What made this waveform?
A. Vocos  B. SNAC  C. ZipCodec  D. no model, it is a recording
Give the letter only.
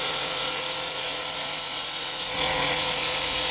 A